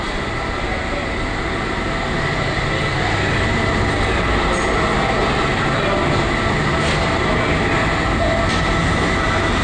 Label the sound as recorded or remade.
recorded